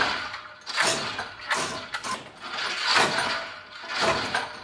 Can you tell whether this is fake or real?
real